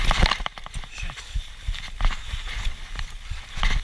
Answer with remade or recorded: recorded